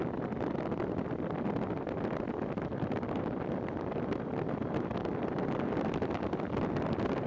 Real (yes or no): yes